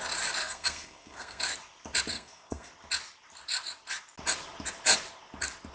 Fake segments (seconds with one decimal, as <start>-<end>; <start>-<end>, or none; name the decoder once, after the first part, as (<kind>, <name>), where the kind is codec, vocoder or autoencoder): 0.4-1.4 (codec, SNAC); 2.1-2.7